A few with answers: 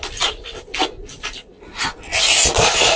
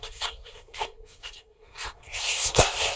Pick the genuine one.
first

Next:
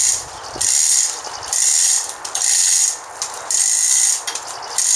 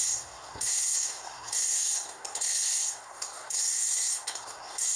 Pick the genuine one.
first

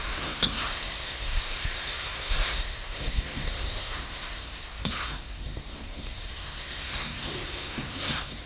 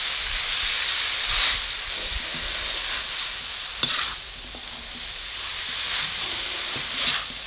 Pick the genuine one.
second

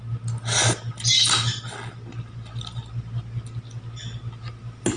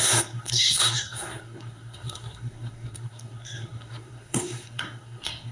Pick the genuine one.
first